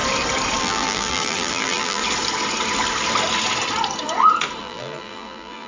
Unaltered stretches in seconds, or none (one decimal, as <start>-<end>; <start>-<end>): 0.0-0.6; 2.0-4.6